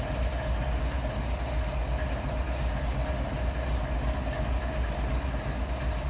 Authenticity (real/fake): real